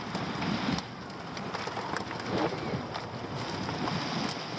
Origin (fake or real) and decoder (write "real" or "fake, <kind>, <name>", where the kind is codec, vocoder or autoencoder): real